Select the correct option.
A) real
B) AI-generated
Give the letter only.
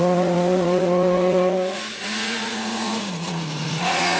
B